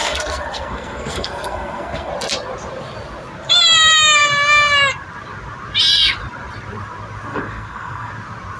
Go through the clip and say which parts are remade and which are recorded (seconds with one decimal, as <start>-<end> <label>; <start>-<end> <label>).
0.0-2.1 remade; 2.1-7.3 recorded; 7.3-8.1 remade; 8.1-8.6 recorded